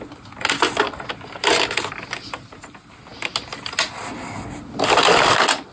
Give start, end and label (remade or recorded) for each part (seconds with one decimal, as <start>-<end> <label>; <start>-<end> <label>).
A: 0.0-5.7 recorded